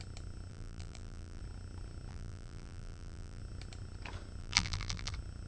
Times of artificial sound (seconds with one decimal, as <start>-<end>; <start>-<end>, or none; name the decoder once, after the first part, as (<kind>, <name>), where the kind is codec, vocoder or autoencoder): 0.5-1.4 (vocoder, BigVGAN v2); 2.1-3.4; 4.4-5.1